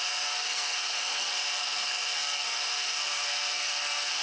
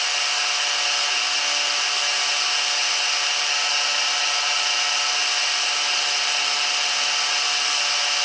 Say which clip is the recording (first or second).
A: second